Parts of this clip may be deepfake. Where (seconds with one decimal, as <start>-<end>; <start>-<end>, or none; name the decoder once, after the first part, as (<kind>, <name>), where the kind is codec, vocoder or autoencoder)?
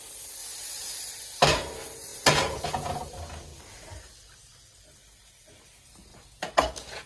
2.1-3.0 (vocoder, Vocos); 6.1-7.1